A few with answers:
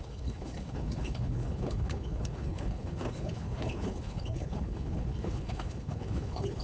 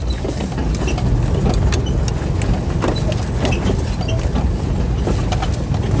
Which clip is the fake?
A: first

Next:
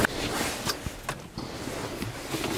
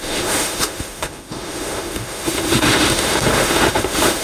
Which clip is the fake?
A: second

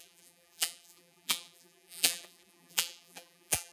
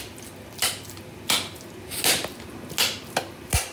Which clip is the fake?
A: first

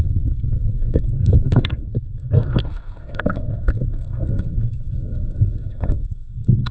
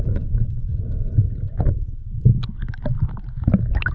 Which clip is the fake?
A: first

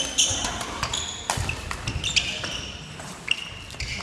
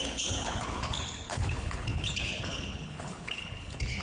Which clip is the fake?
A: second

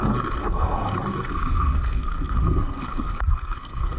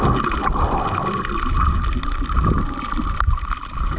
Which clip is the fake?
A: first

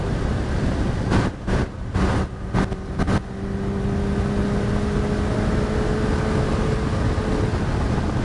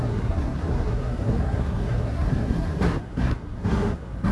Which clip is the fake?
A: second